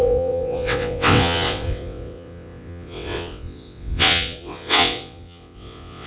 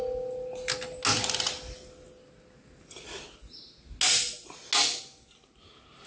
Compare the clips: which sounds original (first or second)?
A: second